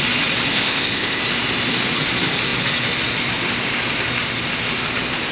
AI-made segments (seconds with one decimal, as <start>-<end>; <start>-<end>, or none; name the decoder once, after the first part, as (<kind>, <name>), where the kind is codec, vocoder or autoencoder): 0.5-1.2 (codec, ZipCodec)